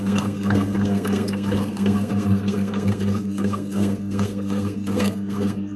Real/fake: fake